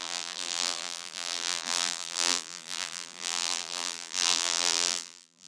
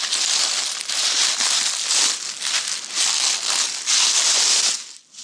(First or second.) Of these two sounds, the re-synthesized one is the first